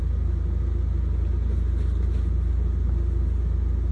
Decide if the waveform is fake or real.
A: real